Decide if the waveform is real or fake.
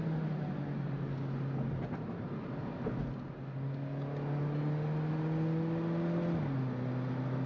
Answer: real